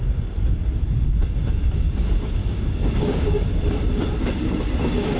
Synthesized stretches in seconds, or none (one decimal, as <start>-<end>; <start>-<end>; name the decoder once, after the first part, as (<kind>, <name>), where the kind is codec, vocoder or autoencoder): 2.4-3.4 (codec, DAC)